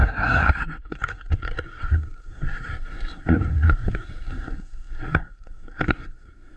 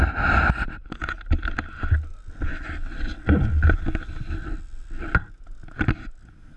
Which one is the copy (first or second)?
first